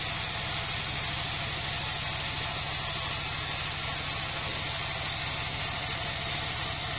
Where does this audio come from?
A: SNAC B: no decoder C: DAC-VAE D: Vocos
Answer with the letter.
B